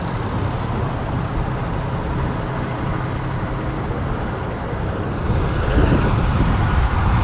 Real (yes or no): yes